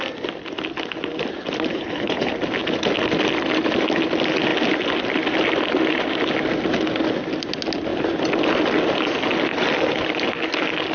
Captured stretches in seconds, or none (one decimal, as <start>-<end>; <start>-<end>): 0.0-1.7; 2.3-10.9